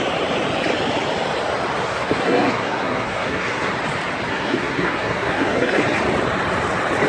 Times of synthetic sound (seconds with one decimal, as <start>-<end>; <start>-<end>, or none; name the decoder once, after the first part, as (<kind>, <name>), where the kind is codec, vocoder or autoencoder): 1.8-3.7 (codec, SNAC); 4.3-5.8